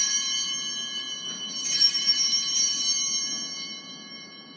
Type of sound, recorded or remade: remade